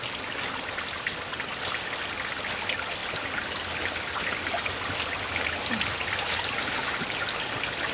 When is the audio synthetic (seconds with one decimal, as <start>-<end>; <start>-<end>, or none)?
none